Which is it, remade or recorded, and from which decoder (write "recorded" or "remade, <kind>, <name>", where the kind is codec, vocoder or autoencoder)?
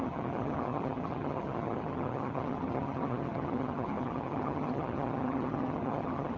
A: remade, vocoder, HiFi-GAN